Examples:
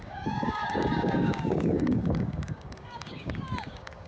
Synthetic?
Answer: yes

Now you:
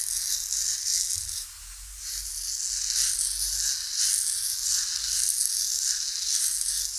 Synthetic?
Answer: no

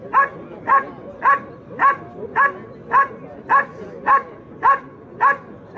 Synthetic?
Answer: no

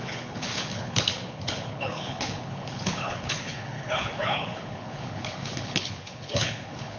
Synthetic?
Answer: yes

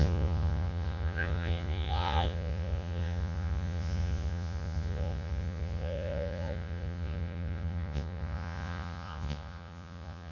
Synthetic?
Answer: yes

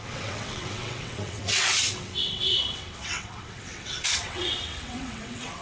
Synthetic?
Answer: yes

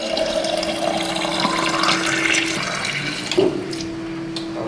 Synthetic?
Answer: no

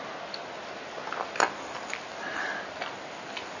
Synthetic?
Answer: no